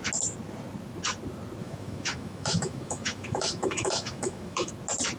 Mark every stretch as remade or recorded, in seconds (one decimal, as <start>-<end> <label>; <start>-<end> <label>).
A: 0.0-1.6 recorded; 1.6-4.7 remade; 4.7-5.2 recorded